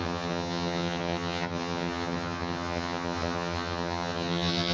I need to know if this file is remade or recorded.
remade